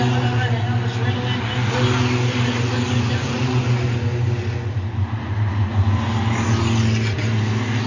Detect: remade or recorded recorded